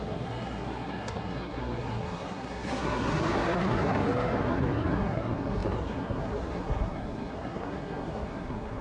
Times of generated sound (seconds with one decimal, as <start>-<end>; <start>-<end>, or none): 0.0-8.8